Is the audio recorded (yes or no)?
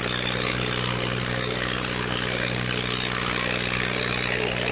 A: yes